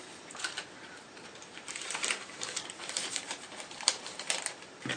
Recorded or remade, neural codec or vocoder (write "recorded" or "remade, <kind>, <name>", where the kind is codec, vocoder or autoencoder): remade, vocoder, BigVGAN v2